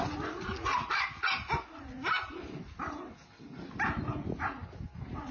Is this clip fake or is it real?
real